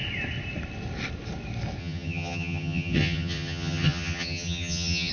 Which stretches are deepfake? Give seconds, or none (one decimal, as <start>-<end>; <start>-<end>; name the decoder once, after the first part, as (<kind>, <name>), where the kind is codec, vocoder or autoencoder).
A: 1.8-5.1 (vocoder, HiFi-GAN)